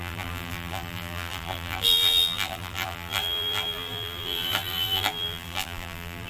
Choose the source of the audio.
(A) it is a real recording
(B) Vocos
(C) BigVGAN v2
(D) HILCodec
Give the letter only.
C